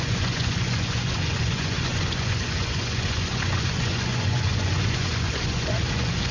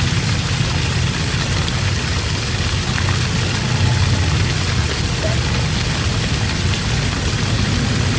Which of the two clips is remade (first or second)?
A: first